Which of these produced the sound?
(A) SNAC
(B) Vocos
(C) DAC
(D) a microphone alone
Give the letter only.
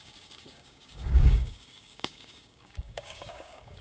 C